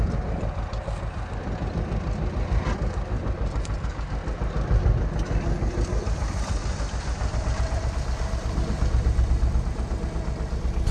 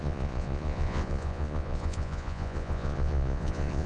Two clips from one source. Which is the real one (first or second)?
first